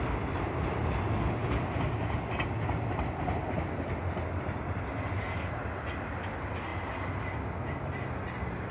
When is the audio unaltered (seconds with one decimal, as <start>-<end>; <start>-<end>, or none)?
0.0-8.7